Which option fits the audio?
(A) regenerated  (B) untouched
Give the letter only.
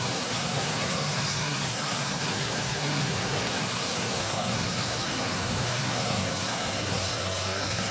A